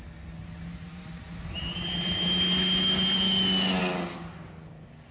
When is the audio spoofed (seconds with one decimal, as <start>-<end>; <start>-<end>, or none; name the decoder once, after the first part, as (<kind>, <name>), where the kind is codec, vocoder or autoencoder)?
none